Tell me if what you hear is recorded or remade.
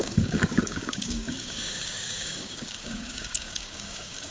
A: remade